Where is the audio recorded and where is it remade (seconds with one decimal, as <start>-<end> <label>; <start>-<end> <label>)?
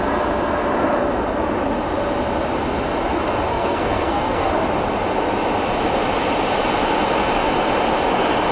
0.0-3.5 recorded; 3.5-4.5 remade; 4.5-8.5 recorded